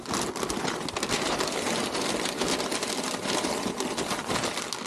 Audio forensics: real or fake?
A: real